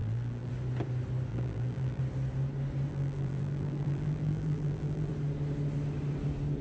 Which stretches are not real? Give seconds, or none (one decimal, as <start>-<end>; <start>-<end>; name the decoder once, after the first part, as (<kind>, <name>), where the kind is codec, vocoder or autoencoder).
0.0-0.5 (vocoder, BigVGAN v2); 1.3-2.0; 2.9-5.1